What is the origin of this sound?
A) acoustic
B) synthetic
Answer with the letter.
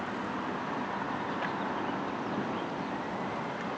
A